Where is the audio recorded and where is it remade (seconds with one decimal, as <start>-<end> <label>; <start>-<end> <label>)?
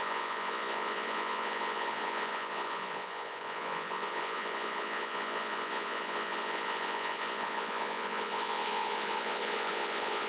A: 0.0-10.3 remade